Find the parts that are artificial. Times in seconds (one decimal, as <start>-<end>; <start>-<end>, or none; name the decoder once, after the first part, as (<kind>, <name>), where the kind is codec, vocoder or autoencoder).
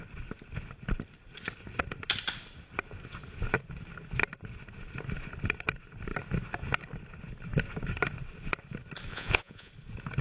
9.1-9.7 (vocoder, Vocos)